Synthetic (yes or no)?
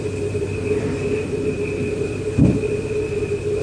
yes